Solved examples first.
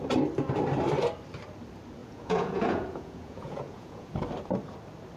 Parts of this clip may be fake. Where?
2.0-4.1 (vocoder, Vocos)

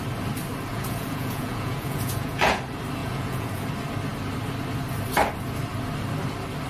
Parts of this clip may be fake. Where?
0.7-2.6 (vocoder, Vocos); 3.0-3.6

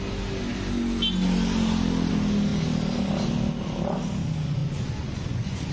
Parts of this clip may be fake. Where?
4.6-5.7 (vocoder, Vocos)

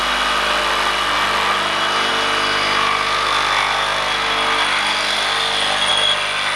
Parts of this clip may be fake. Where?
none

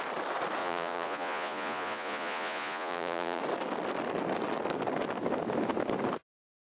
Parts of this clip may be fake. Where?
0.6-3.4 (vocoder, Vocos)

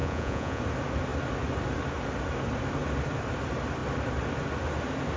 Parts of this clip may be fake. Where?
0.0-0.6 (vocoder, Vocos)